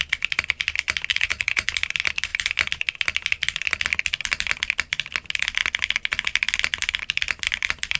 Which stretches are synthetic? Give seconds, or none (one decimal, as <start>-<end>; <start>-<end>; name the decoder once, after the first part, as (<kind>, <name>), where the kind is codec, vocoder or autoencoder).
1.1-1.7 (vocoder, Vocos)